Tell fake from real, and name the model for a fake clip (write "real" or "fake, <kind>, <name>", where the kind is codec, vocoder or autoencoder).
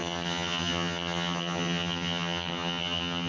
fake, vocoder, HiFi-GAN